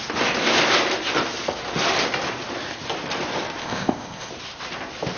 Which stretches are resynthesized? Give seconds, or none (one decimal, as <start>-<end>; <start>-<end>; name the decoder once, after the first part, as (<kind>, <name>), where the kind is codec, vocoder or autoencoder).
3.6-4.3 (codec, ZipCodec)